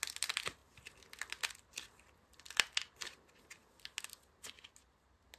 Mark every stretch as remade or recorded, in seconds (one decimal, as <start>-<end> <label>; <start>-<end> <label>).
0.0-5.4 recorded